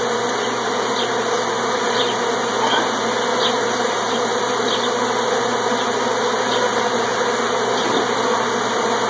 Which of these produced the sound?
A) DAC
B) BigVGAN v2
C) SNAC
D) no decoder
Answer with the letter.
D